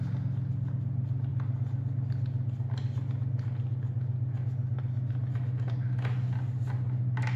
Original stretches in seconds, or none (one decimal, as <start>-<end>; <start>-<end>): 0.0-7.4